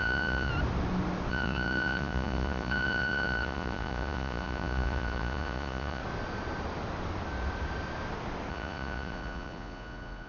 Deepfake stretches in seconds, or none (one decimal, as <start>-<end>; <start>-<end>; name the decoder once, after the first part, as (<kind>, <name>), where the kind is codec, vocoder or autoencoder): 0.0-0.5 (vocoder, Vocos); 1.3-6.0; 8.5-10.3

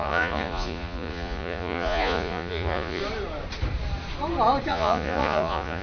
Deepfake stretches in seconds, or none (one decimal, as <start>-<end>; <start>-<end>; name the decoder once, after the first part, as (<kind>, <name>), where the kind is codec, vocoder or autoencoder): 0.0-3.0 (vocoder, Vocos); 4.7-5.8

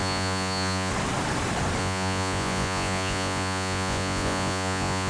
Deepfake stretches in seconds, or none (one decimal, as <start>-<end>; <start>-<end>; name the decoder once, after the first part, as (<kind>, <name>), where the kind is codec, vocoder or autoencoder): 0.0-0.9 (vocoder, Vocos); 1.8-5.1

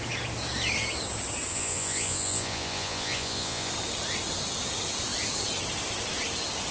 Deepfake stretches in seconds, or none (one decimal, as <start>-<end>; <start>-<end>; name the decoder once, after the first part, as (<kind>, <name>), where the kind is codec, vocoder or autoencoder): 1.5-3.7 (vocoder, Vocos)

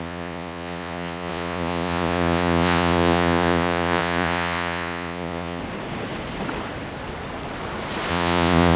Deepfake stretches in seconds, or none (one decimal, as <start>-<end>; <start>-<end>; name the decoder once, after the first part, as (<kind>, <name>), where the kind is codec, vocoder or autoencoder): 0.0-5.6 (vocoder, Vocos); 8.1-8.8

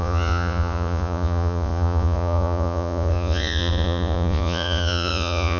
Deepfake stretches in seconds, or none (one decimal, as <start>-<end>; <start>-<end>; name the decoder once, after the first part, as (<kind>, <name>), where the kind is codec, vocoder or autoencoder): 0.0-5.6 (vocoder, Vocos)